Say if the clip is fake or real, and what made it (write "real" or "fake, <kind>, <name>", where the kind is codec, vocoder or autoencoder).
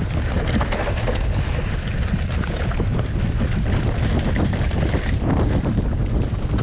real